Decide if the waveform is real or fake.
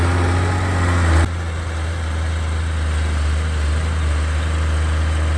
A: real